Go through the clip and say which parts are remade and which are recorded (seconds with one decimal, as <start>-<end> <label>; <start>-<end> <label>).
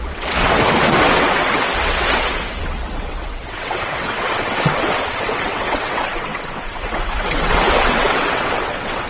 0.0-9.1 remade